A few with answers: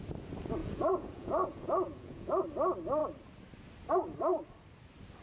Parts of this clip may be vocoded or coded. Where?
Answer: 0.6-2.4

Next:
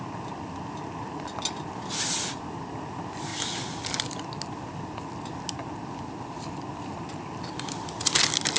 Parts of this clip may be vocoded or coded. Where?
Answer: none

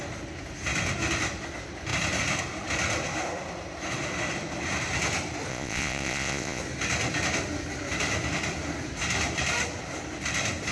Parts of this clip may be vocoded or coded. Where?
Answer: 5.5-6.6

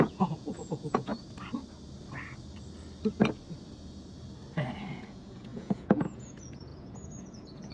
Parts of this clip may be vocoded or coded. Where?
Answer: 0.0-1.1; 4.9-7.7

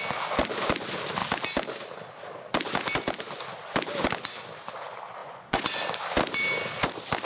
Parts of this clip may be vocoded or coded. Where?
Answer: 5.2-5.7

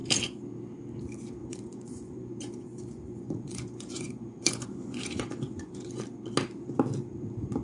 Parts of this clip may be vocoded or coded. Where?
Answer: 1.4-6.0

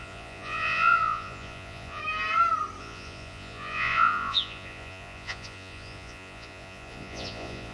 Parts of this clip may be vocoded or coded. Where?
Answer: 0.0-2.0; 2.8-7.7

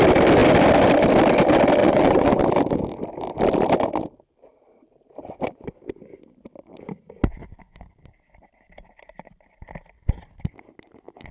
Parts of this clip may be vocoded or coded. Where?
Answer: 1.8-2.4